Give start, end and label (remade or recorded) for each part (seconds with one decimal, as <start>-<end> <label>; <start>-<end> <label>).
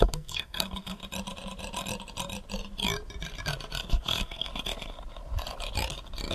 0.0-1.0 remade; 1.0-3.9 recorded; 3.9-4.5 remade; 4.5-6.3 recorded